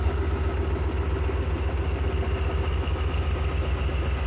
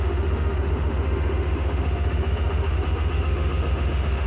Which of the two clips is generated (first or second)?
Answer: second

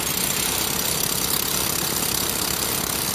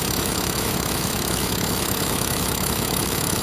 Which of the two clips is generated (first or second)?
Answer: second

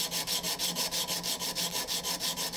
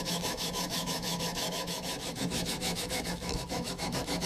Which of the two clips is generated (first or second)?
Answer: second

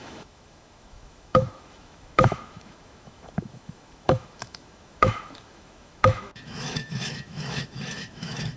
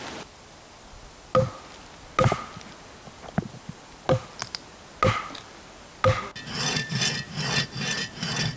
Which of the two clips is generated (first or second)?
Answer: first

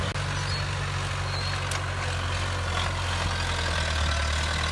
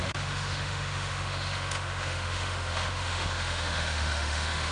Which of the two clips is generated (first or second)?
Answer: second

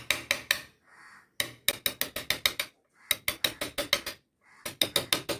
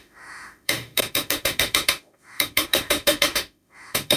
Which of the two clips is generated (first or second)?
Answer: second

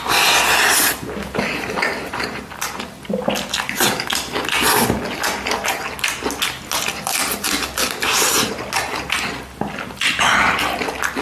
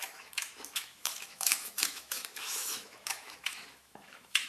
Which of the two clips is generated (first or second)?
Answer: second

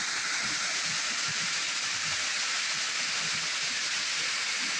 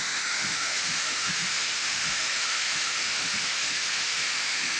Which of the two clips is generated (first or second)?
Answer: second